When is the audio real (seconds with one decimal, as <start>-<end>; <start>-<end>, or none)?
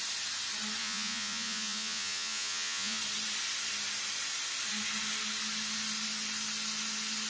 0.0-0.8; 3.0-7.3